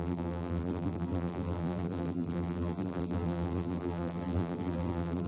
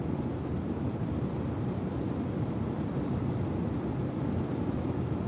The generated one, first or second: first